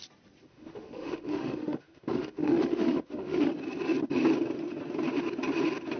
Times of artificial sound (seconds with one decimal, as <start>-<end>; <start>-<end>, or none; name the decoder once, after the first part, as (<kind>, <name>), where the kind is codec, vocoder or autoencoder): 0.5-3.5 (autoencoder, DAC-VAE)